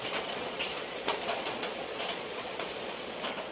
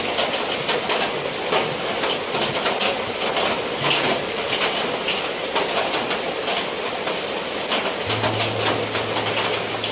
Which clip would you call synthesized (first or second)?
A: first